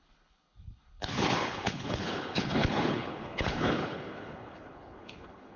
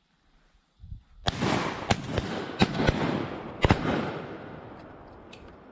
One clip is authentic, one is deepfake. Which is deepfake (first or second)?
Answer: first